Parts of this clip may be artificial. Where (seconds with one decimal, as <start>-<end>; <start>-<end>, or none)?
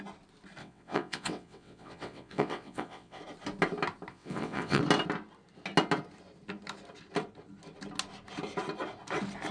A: 0.6-3.2; 4.1-4.8